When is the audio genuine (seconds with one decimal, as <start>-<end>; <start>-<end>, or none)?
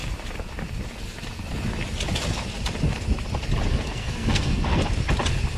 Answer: 0.0-3.7; 4.8-5.6